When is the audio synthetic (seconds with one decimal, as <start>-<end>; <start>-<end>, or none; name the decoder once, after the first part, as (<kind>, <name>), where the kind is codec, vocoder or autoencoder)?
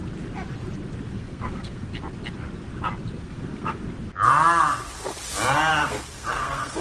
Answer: 1.1-1.9 (codec, SNAC); 3.2-3.8; 5.7-6.8